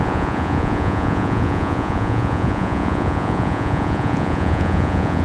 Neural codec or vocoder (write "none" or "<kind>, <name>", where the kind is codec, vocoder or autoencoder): vocoder, Vocos